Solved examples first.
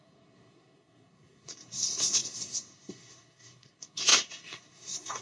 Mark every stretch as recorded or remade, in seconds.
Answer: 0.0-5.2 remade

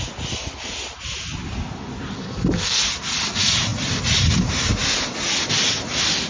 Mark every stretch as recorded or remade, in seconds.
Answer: 0.0-2.2 recorded; 2.2-2.8 remade; 2.8-6.3 recorded

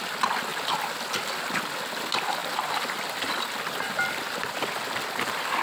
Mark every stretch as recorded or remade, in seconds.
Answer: 0.0-5.6 recorded